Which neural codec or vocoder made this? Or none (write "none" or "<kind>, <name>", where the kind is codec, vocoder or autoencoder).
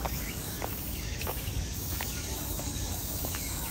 codec, DAC